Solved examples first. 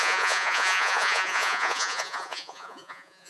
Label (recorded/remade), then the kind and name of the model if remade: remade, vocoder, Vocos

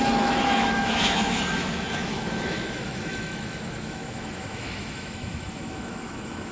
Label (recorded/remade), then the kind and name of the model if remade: remade, autoencoder, DAC-VAE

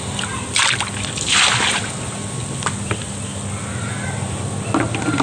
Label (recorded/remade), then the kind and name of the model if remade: recorded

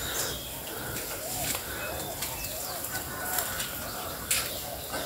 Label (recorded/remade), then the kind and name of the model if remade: recorded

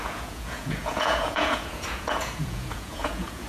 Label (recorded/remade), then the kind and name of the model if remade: remade, vocoder, Vocos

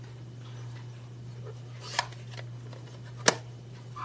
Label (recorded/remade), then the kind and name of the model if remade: recorded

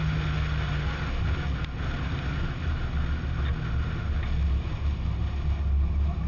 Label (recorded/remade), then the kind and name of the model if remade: recorded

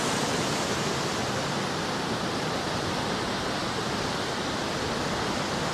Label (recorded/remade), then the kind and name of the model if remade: recorded